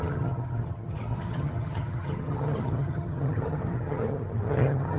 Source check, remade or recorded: remade